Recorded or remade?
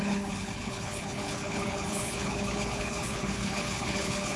remade